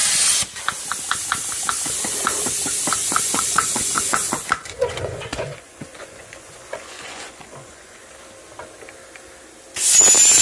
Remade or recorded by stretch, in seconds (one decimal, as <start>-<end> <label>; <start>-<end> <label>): 0.0-3.0 recorded; 3.0-8.0 remade; 8.0-10.4 recorded